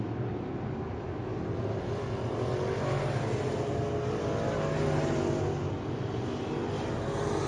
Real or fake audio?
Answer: real